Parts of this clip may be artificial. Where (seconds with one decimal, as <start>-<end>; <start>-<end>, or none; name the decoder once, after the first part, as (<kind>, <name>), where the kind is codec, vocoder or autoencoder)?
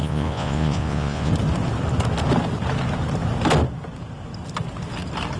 0.0-1.3 (vocoder, Vocos)